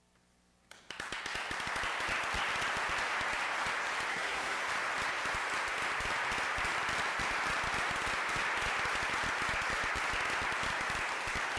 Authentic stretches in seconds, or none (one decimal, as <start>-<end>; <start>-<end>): 0.0-4.1; 4.7-11.6